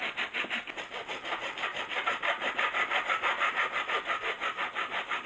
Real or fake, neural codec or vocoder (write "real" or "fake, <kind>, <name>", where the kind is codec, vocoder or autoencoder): real